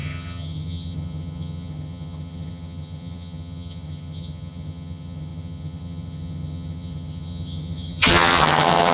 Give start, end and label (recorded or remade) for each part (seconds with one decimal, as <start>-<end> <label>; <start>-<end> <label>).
0.0-8.9 remade